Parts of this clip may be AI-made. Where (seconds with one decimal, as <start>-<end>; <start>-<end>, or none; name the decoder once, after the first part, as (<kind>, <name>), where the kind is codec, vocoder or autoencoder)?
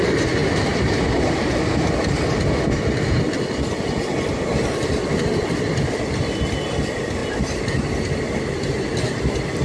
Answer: none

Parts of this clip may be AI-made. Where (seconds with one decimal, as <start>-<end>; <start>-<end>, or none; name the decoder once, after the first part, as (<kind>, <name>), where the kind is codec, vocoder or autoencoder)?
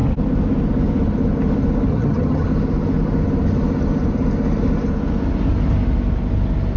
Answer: 1.9-2.5 (vocoder, HiFi-GAN)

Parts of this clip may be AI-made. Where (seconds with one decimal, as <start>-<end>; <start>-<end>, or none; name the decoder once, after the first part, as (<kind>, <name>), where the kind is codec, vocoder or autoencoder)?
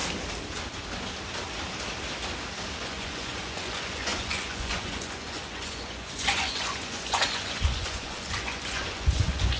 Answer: 2.8-9.6 (vocoder, Vocos)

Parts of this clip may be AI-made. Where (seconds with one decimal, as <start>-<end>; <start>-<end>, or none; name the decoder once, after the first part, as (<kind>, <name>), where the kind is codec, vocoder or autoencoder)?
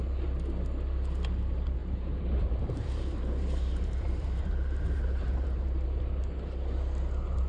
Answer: 1.8-6.0 (vocoder, BigVGAN v2)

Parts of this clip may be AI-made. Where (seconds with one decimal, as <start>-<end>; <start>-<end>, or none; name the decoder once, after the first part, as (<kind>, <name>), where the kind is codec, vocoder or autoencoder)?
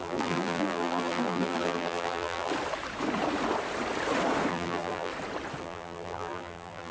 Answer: 0.0-2.5 (vocoder, BigVGAN v2); 4.5-5.1; 5.6-6.9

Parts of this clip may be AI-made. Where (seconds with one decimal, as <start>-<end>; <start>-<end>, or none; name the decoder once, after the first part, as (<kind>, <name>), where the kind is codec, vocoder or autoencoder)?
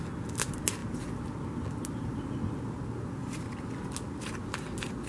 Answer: none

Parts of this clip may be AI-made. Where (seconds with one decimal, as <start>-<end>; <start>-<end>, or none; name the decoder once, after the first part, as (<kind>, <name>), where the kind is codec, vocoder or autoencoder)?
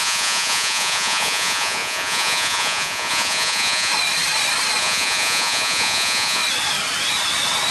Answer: 0.0-3.9 (vocoder, Vocos); 4.8-6.4